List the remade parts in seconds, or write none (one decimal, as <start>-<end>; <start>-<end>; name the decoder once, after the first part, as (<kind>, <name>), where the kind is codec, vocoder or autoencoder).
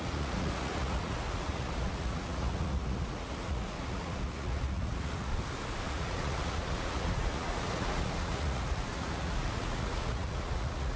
0.0-5.3 (vocoder, Vocos); 5.9-11.0